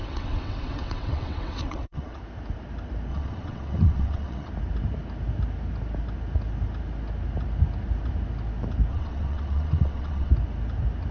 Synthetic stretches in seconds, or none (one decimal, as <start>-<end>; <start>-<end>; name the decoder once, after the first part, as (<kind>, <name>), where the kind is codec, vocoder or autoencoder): 0.0-2.2 (vocoder, WaveNeXt); 3.1-4.5; 8.9-10.3

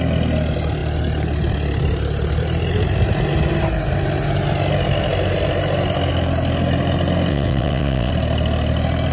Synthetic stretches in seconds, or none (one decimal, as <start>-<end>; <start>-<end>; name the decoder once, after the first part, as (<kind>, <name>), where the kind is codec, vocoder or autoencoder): 7.3-8.1 (vocoder, WaveNeXt)

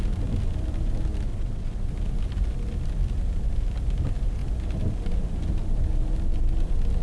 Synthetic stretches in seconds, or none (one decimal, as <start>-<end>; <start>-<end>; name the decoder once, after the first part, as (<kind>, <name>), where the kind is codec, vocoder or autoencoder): 1.3-1.9 (vocoder, WaveNeXt)

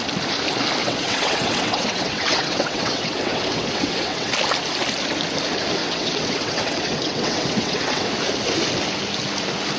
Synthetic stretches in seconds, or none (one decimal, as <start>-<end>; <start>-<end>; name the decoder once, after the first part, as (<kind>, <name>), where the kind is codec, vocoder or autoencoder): 0.8-4.3 (vocoder, WaveNeXt); 5.8-8.1

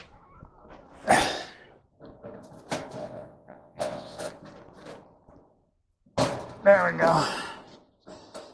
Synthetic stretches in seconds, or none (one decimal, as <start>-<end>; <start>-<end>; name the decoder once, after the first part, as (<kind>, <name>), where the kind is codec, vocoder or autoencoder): 3.0-4.3 (vocoder, WaveNeXt)

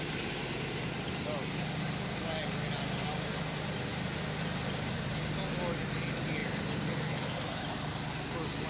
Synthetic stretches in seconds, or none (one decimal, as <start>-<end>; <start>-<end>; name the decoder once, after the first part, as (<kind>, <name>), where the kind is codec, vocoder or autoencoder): none

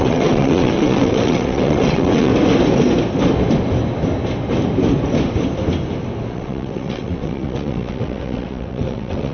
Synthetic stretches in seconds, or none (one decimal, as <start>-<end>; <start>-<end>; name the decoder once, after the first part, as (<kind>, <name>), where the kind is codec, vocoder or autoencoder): 0.0-2.3 (vocoder, WaveNeXt); 6.3-9.3

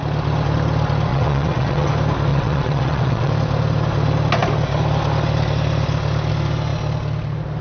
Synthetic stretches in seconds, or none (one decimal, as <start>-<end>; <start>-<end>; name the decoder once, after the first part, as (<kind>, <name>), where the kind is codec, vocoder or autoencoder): 1.1-1.9 (vocoder, WaveNeXt); 2.3-3.3